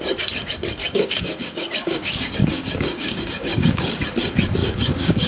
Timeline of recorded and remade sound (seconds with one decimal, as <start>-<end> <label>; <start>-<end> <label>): 0.0-0.8 recorded; 0.8-4.0 remade; 4.0-4.6 recorded; 4.6-5.3 remade

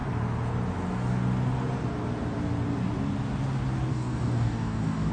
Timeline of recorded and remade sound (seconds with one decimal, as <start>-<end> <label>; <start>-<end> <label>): 0.0-3.9 recorded; 3.9-5.1 remade

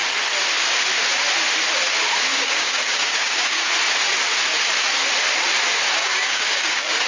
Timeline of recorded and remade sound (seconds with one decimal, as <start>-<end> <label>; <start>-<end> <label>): 0.0-2.3 recorded; 2.3-3.7 remade; 3.7-6.0 recorded; 6.0-7.1 remade

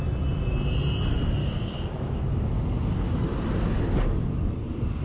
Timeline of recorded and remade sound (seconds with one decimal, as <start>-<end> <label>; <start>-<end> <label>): 0.0-1.4 recorded; 1.4-2.5 remade; 2.5-5.0 recorded

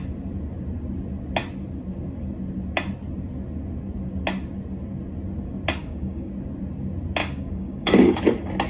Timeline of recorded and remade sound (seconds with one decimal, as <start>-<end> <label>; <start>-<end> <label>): 0.0-5.8 recorded; 5.8-6.3 remade; 6.3-7.2 recorded; 7.2-8.2 remade; 8.2-8.7 recorded

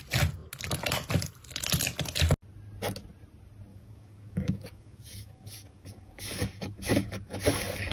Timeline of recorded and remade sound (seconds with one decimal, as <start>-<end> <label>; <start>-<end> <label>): 0.0-3.7 recorded; 3.7-7.9 remade